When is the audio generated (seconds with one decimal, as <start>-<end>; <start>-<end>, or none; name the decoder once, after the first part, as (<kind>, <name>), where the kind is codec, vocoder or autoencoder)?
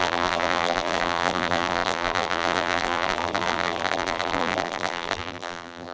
0.0-5.9 (vocoder, BigVGAN v2)